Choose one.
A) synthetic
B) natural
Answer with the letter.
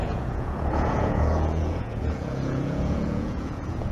A